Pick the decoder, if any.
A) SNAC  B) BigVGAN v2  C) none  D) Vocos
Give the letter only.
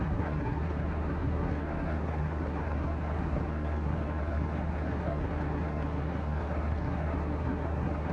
A